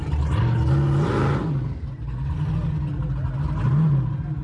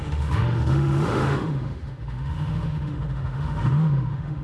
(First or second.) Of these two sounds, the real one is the first